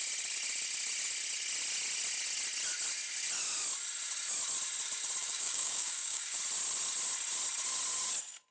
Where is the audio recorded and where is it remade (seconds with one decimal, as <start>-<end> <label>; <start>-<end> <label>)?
0.0-5.2 recorded; 5.2-6.4 remade; 6.4-8.5 recorded